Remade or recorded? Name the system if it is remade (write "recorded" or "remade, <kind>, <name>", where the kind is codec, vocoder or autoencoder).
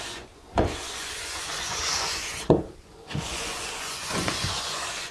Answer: remade, vocoder, Vocos